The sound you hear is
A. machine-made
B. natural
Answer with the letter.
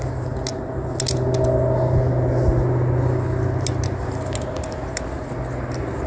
B